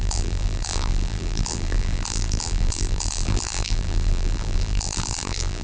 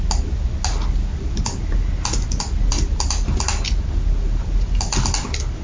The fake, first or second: first